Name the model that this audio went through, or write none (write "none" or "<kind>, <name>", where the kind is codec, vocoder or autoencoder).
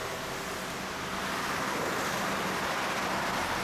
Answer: none